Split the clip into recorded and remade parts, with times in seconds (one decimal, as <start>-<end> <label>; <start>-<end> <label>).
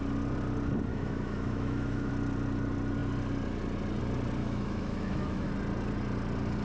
0.0-0.9 recorded; 0.9-2.1 remade; 2.1-4.4 recorded; 4.4-5.5 remade; 5.5-6.6 recorded